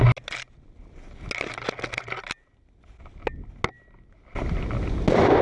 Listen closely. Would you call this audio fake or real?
real